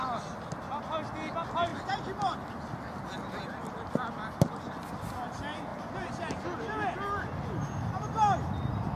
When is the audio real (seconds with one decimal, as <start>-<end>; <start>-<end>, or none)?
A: 0.0-9.0